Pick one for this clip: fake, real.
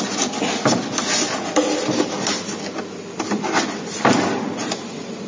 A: real